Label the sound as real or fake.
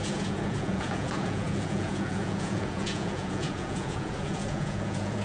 fake